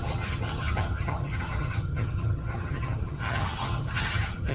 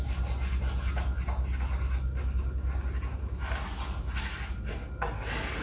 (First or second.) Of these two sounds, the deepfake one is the first